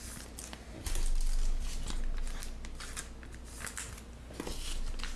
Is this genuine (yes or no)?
yes